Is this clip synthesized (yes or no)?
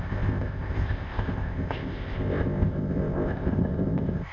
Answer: yes